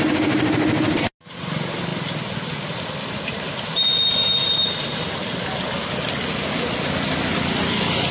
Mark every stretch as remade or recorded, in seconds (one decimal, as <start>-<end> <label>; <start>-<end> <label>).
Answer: 0.0-8.1 recorded